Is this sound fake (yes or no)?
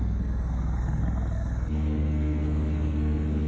yes